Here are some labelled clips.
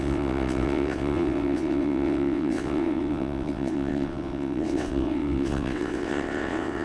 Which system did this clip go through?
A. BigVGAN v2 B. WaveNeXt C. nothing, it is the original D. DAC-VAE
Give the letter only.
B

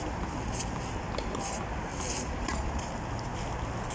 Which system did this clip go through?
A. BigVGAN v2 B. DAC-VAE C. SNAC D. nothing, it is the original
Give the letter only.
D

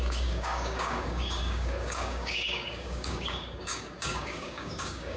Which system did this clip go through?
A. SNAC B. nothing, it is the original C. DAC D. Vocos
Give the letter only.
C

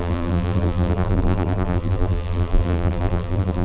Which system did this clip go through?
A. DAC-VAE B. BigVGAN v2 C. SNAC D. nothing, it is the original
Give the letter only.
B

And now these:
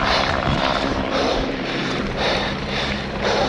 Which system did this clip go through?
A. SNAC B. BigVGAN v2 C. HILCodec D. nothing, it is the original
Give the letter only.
B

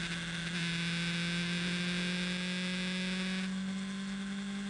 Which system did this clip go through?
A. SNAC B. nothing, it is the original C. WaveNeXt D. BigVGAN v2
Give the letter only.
B